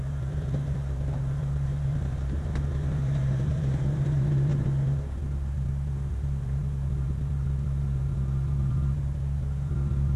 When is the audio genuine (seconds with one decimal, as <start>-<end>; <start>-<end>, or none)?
4.5-6.1